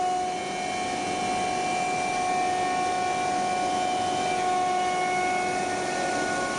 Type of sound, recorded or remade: recorded